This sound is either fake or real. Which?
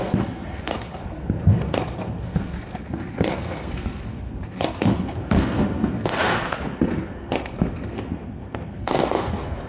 fake